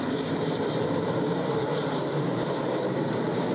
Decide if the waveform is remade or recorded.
remade